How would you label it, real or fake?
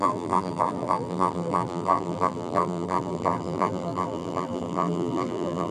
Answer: fake